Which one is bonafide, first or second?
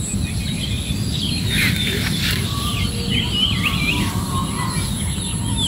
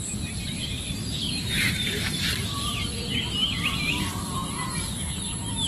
first